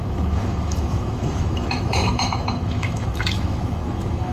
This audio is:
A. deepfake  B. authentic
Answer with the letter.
A